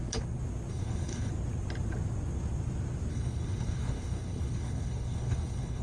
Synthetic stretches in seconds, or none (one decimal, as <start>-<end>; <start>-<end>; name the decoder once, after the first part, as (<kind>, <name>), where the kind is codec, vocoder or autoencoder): 0.7-1.3 (codec, HILCodec); 3.1-5.8